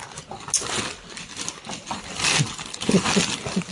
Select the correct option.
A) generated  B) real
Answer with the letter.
B